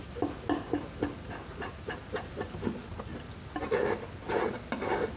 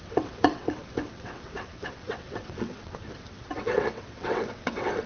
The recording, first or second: first